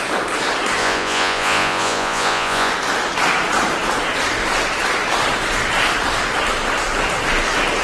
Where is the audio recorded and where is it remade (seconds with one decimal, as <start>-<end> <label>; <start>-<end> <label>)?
0.0-0.8 recorded; 0.8-2.7 remade; 2.7-7.8 recorded